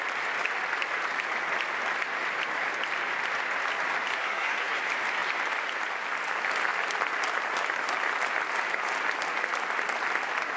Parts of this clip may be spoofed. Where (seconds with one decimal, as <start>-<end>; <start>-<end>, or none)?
4.1-4.8